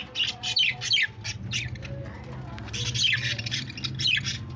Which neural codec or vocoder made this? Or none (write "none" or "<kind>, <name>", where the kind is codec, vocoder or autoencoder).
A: none